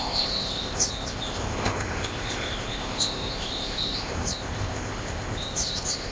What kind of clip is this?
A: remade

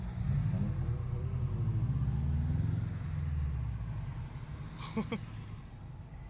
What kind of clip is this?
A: recorded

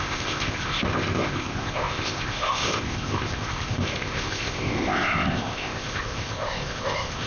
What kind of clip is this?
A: remade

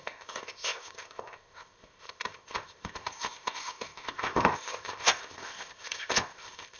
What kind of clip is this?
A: remade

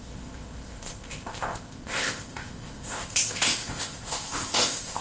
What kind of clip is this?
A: remade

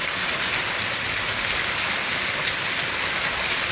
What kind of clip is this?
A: recorded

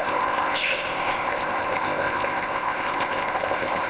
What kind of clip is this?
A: remade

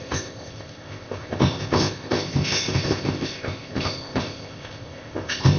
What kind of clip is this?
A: remade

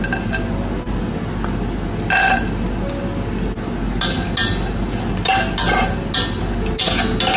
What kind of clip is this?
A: recorded